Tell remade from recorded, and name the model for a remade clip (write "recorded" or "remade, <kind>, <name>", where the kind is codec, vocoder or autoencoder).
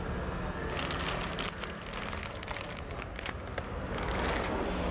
recorded